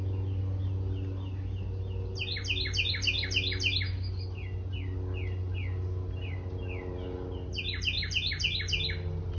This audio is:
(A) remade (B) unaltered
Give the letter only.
B